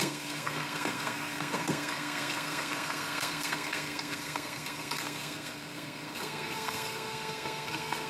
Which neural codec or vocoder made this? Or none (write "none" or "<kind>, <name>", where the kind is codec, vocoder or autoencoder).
codec, SNAC